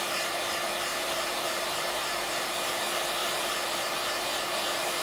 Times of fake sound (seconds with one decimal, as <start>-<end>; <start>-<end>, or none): 0.9-2.7; 3.2-5.0